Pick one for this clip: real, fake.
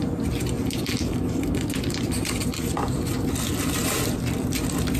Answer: fake